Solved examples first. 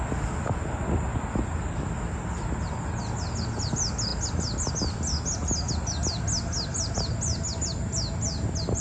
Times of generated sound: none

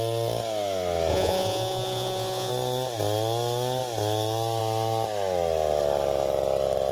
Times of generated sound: 1.1-2.5 (vocoder, Vocos)

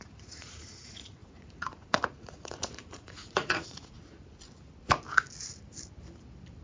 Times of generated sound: 0.0-4.0 (vocoder, Vocos)